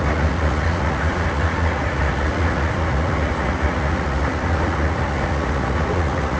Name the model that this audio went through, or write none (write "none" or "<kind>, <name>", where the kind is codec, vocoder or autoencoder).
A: vocoder, Vocos